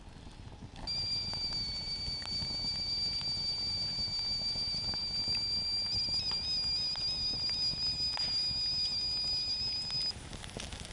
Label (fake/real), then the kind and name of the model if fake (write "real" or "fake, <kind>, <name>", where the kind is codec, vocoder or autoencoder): real